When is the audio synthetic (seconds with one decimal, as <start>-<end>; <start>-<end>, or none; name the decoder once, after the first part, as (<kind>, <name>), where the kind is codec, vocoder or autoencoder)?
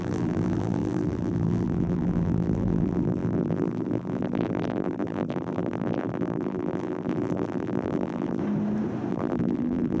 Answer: 0.0-8.4 (vocoder, BigVGAN v2); 9.1-10.0